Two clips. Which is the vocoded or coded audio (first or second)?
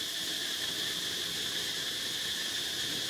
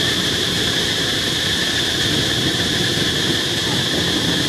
second